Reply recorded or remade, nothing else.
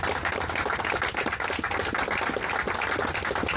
recorded